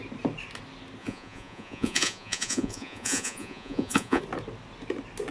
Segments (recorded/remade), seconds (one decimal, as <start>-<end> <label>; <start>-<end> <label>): 0.0-1.0 recorded; 1.0-4.2 remade; 4.2-5.3 recorded

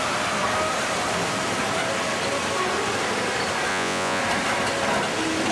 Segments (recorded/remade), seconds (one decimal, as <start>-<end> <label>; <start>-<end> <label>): 0.0-3.7 recorded; 3.7-4.2 remade; 4.2-5.5 recorded